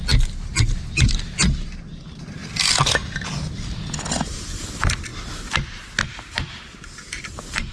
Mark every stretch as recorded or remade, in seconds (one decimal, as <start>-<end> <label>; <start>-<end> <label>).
0.0-2.0 recorded; 2.0-2.4 remade; 2.4-4.1 recorded; 4.1-5.1 remade; 5.1-6.0 recorded; 6.0-7.7 remade